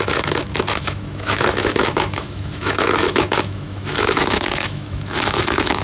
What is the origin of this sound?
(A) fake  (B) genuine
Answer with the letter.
A